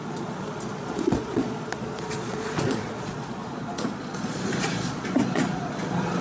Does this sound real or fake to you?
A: fake